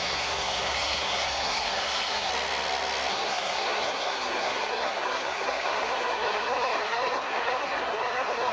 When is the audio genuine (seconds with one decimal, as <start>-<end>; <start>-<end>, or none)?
2.3-3.1